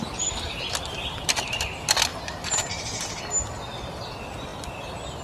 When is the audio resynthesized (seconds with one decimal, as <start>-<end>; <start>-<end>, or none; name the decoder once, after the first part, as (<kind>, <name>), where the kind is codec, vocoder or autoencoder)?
2.1-3.2 (vocoder, BigVGAN v2)